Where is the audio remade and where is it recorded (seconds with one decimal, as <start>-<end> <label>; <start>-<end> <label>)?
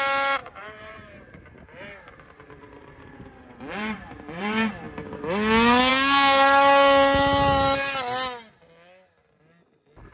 0.0-0.4 recorded; 0.4-4.7 remade; 4.7-10.1 recorded